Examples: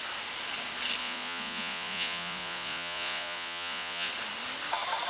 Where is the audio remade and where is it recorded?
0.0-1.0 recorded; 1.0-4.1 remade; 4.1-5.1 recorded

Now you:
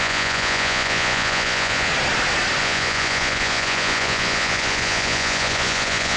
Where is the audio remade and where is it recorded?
0.0-1.9 remade; 1.9-2.6 recorded; 2.6-6.2 remade